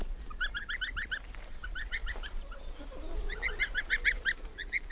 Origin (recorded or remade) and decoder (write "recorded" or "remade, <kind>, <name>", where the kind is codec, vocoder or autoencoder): recorded